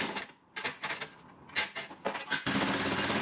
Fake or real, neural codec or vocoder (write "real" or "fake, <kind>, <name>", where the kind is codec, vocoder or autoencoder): real